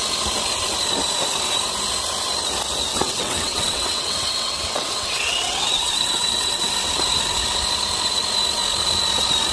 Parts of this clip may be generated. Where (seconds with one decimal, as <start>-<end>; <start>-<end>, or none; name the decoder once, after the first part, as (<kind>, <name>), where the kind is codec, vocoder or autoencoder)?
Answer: 2.9-6.6 (vocoder, WaveNeXt)